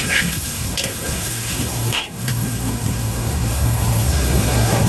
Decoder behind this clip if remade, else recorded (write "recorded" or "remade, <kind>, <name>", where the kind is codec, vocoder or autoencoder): remade, codec, SNAC